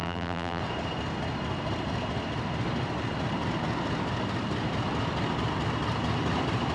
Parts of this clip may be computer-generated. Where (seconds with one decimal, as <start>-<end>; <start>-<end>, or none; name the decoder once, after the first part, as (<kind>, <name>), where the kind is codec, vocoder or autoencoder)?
0.0-0.6 (vocoder, BigVGAN v2)